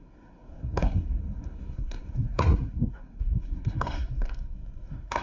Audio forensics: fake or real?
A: fake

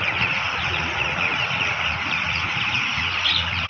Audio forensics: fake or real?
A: fake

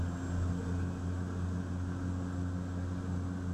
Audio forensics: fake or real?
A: real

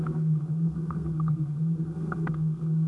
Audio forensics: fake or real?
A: fake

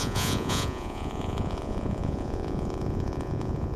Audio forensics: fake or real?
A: fake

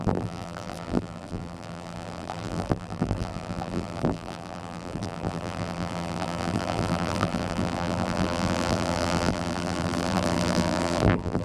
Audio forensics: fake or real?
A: fake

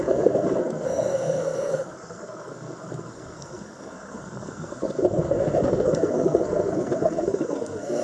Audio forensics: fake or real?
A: fake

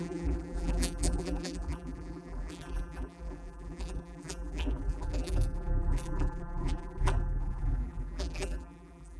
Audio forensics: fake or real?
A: fake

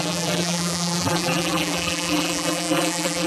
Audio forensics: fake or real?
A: fake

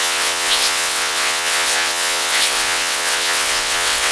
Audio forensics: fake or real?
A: fake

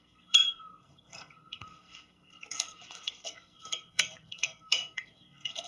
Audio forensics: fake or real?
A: fake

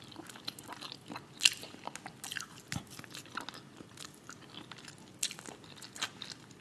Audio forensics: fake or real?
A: real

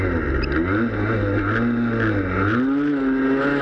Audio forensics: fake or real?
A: real